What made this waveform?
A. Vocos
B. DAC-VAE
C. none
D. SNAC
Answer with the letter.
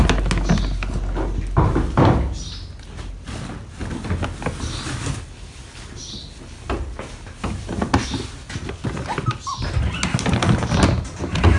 C